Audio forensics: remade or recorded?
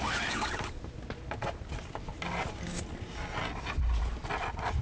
recorded